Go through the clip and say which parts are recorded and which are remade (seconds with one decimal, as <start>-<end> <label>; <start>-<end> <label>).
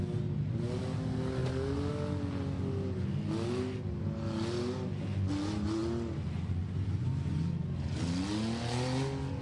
0.0-9.4 recorded